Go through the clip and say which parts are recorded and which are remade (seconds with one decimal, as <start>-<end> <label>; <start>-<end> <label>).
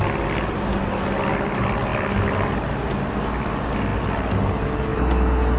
0.0-1.9 recorded; 1.9-2.7 remade; 2.7-5.6 recorded